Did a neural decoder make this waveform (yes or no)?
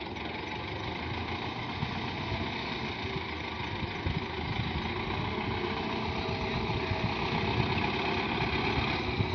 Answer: no